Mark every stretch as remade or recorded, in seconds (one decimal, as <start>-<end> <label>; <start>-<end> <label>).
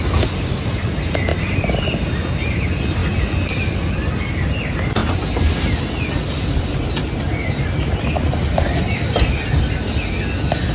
0.0-10.7 recorded